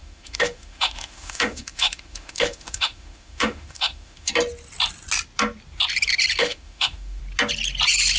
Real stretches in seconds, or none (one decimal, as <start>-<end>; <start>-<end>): 4.3-6.4; 7.2-8.2